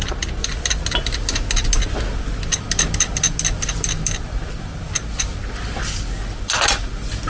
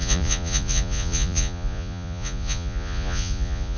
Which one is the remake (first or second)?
second